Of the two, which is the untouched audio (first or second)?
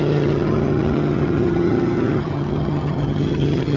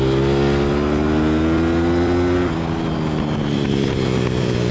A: second